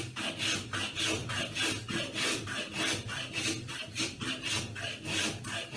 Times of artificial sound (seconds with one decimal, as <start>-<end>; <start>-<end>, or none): 1.2-4.2